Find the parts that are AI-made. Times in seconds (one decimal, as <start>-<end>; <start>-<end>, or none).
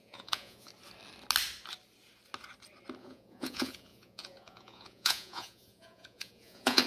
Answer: 0.0-0.7; 3.0-6.9